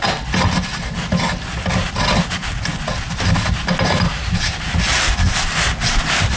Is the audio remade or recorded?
recorded